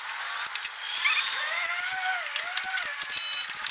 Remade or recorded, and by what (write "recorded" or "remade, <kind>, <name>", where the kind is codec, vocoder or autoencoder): recorded